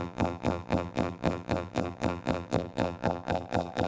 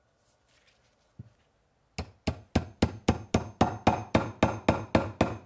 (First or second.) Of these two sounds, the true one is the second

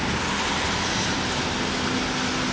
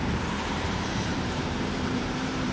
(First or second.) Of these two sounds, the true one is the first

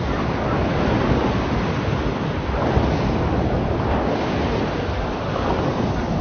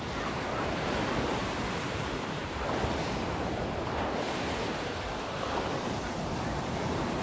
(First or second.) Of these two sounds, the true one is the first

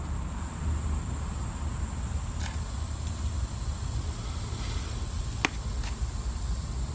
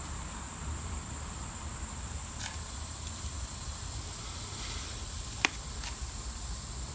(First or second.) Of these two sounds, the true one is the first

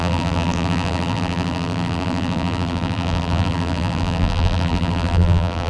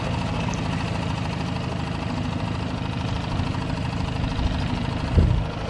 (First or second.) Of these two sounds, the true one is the second